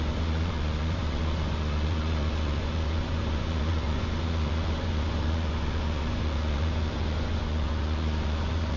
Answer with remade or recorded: remade